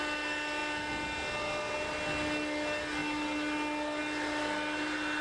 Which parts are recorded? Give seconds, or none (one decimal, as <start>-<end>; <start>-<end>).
0.0-5.2